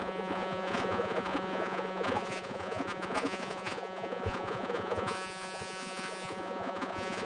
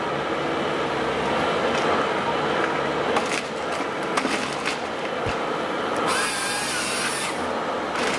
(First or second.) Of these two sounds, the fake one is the first